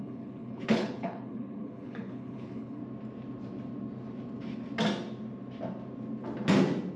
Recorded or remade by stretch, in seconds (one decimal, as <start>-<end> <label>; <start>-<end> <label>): 0.0-2.8 remade; 2.8-7.0 recorded